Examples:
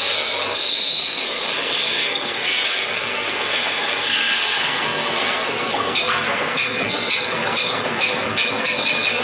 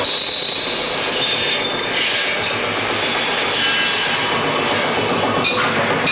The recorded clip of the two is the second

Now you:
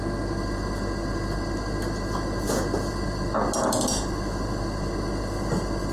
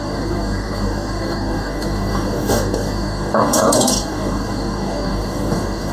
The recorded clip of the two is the first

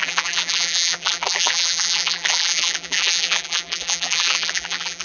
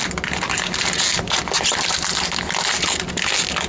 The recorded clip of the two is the second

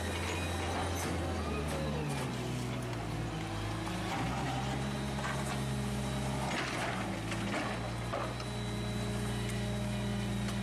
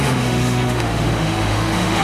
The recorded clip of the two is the first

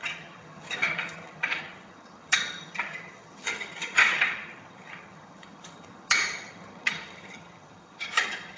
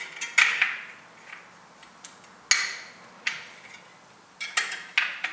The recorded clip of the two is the second